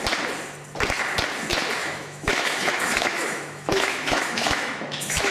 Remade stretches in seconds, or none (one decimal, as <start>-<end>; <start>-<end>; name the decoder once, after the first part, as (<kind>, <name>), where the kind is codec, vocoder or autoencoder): 1.8-5.3 (autoencoder, DAC-VAE)